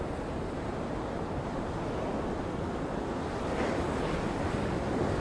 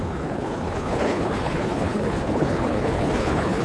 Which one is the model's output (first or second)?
second